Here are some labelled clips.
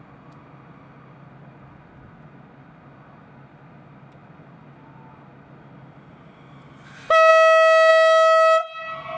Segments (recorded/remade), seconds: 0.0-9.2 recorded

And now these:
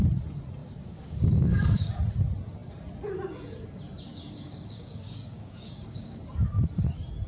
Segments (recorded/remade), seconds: 0.0-0.6 recorded; 0.6-2.0 remade; 2.0-4.1 recorded; 4.1-6.2 remade; 6.2-7.3 recorded

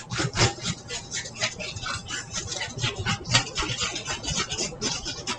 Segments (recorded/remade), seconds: 0.0-4.0 recorded; 4.0-4.9 remade; 4.9-5.4 recorded

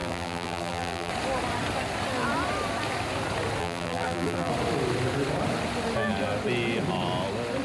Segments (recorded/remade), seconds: 0.0-1.1 remade; 1.1-3.6 recorded; 3.6-4.5 remade; 4.5-7.6 recorded

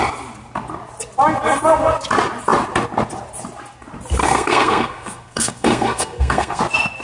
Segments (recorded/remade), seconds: 0.0-4.2 recorded; 4.2-6.6 remade; 6.6-7.0 recorded

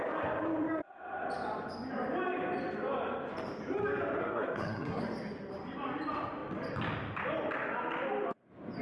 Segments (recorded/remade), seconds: 0.0-4.2 recorded; 4.2-5.0 remade; 5.0-8.8 recorded